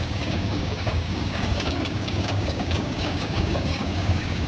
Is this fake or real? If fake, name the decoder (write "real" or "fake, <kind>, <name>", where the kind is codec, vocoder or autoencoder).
fake, codec, DAC